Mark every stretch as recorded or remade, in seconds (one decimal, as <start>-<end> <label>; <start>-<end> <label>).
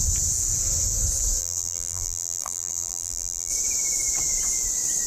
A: 0.0-1.4 recorded; 1.4-3.5 remade; 3.5-5.1 recorded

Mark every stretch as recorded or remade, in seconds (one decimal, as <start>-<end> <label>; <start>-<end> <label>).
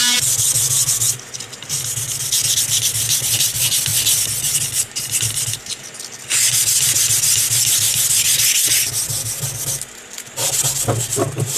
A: 0.0-11.6 recorded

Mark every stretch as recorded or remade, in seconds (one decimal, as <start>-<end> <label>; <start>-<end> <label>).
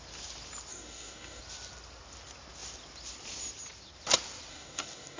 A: 0.0-0.7 recorded; 0.7-1.4 remade; 1.4-4.5 recorded; 4.5-5.2 remade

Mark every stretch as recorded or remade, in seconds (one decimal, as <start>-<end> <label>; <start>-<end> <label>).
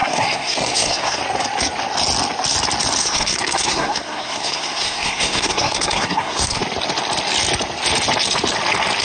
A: 0.0-1.2 remade; 1.2-3.0 recorded; 3.0-6.6 remade; 6.6-9.0 recorded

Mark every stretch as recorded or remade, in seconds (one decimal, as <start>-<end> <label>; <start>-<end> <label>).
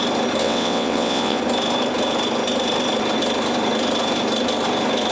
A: 0.0-0.4 recorded; 0.4-1.4 remade; 1.4-5.1 recorded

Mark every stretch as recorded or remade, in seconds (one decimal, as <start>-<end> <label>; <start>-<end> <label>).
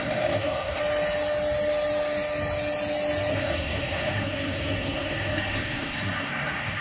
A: 0.0-0.8 remade; 0.8-3.3 recorded; 3.3-6.8 remade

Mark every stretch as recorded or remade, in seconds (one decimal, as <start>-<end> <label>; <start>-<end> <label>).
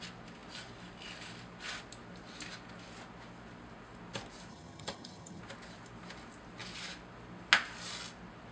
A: 0.0-4.5 recorded; 4.5-5.4 remade; 5.4-8.5 recorded